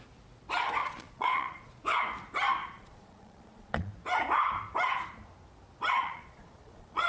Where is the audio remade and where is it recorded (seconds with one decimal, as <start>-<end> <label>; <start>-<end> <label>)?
0.0-0.8 recorded; 0.8-1.8 remade; 1.8-2.6 recorded; 2.6-3.9 remade; 3.9-6.0 recorded; 6.0-7.1 remade